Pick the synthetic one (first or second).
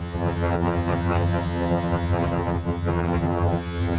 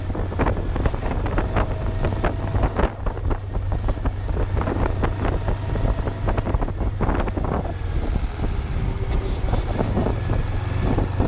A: first